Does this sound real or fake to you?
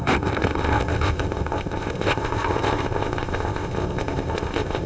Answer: fake